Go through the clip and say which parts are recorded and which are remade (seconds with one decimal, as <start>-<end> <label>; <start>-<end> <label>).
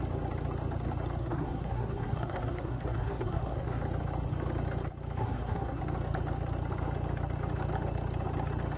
0.0-1.2 recorded; 1.2-3.8 remade; 3.8-5.2 recorded; 5.2-5.8 remade; 5.8-8.8 recorded